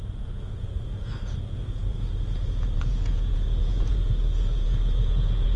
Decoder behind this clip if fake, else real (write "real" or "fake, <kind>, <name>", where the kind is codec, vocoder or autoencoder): fake, vocoder, Vocos